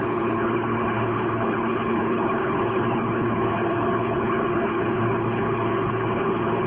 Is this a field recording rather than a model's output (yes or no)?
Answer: no